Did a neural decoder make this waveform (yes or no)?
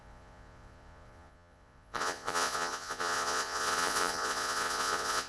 yes